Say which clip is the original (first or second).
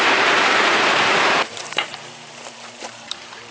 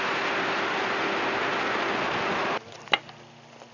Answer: second